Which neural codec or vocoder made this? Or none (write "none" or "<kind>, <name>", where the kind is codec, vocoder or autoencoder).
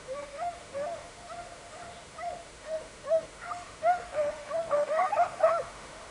autoencoder, DAC-VAE